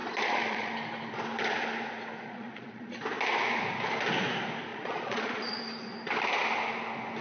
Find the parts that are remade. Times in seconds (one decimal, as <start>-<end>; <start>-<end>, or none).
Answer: 0.0-0.7; 2.2-3.0; 4.7-5.6